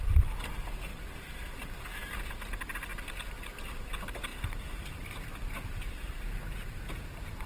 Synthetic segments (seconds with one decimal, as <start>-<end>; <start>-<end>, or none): 0.9-1.8; 2.9-3.9; 4.3-4.9